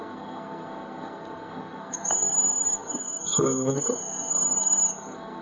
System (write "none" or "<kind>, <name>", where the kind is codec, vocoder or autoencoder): codec, SNAC